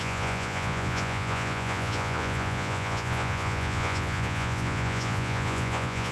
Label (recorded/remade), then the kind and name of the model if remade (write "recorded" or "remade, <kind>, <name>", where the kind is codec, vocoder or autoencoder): remade, vocoder, Vocos